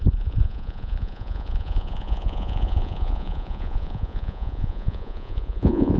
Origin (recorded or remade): remade